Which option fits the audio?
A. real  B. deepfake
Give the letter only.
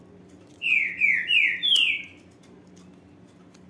A